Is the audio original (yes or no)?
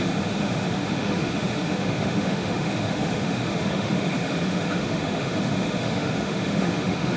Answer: no